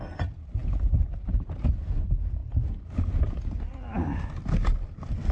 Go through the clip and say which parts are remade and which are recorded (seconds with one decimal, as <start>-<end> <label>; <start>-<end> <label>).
0.0-5.3 recorded